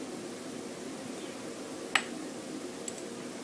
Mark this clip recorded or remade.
recorded